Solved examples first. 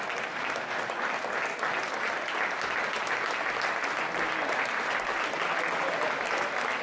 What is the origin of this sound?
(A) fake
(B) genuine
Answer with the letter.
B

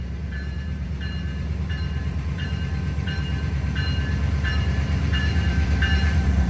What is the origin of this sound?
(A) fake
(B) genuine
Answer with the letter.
A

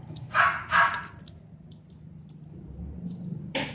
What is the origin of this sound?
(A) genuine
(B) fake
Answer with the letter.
A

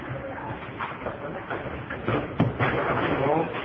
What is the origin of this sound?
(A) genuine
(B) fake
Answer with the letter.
A